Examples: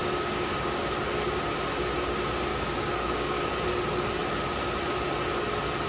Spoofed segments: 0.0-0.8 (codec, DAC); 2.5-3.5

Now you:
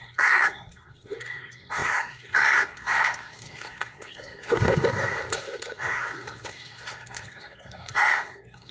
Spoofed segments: 0.0-8.7 (codec, SNAC)

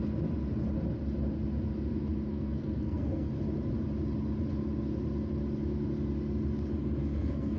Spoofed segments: 2.3-3.3 (codec, SNAC); 7.0-7.6